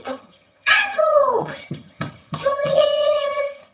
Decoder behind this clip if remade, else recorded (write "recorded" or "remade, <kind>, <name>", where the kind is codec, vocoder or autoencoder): remade, vocoder, HiFi-GAN